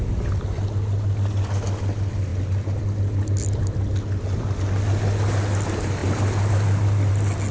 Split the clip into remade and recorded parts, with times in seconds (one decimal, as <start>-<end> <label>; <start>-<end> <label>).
0.0-7.5 recorded